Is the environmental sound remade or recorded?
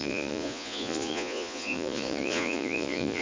remade